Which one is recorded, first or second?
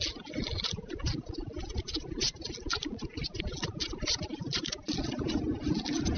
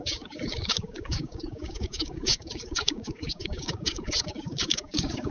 first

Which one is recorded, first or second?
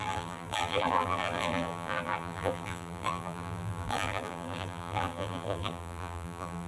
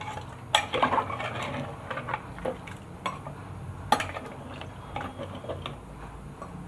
second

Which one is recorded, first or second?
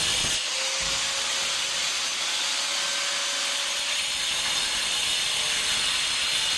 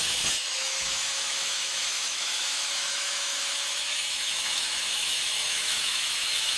first